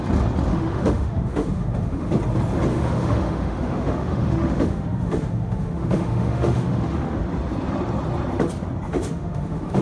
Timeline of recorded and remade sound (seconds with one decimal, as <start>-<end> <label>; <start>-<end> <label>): 0.0-0.5 recorded; 0.5-2.1 remade; 2.1-2.7 recorded; 2.7-7.2 remade; 7.2-8.9 recorded; 8.9-9.8 remade